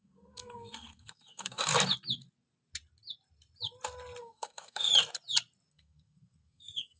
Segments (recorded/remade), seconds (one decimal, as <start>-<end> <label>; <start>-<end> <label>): 0.0-1.7 remade; 1.7-4.2 recorded; 4.2-4.9 remade; 4.9-5.7 recorded; 5.7-7.0 remade